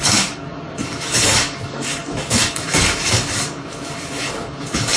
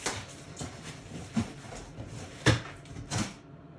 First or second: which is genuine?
second